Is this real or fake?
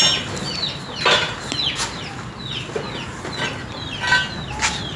real